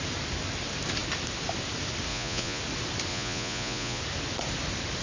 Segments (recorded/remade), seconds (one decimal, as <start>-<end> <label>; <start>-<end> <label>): 0.0-2.1 recorded; 2.1-2.6 remade; 2.6-3.1 recorded; 3.1-4.0 remade; 4.0-5.0 recorded